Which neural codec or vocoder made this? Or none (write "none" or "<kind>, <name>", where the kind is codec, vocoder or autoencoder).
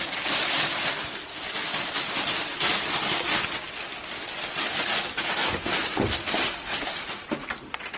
none